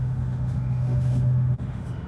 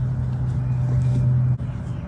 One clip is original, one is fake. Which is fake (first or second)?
first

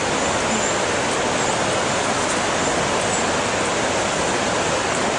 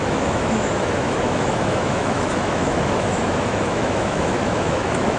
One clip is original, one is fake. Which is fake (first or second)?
second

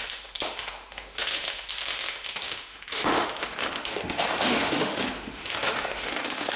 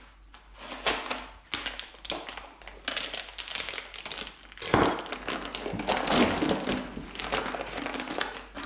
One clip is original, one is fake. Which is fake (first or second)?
first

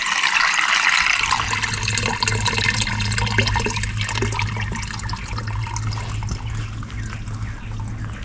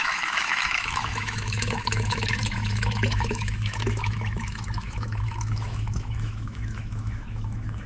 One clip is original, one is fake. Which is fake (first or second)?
second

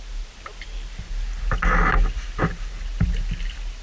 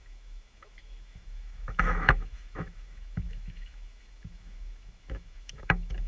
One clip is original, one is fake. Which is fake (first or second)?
second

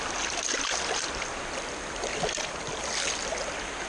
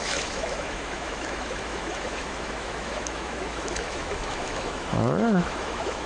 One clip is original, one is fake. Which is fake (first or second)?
second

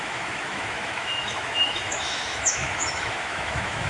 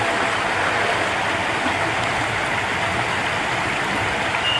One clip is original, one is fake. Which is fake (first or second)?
first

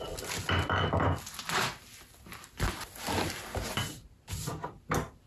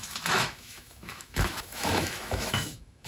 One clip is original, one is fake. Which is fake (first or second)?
second